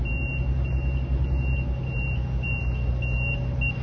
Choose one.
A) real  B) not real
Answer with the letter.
A